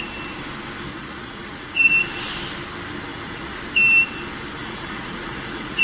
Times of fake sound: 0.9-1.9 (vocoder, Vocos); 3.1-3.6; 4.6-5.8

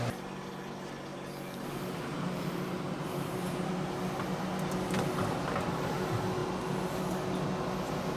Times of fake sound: 1.1-3.7 (vocoder, BigVGAN v2)

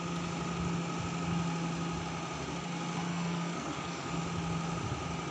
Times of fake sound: 3.1-4.2 (codec, SNAC)